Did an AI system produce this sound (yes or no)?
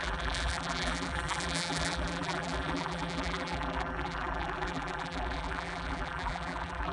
yes